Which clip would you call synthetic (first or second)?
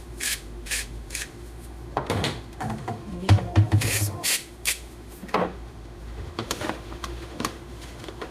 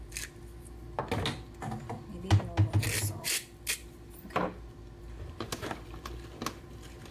first